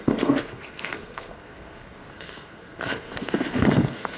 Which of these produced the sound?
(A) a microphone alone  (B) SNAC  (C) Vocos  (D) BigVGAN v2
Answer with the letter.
B